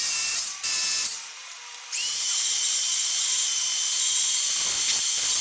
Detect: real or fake real